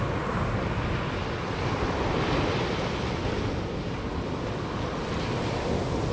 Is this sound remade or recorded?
recorded